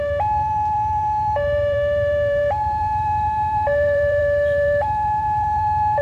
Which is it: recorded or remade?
remade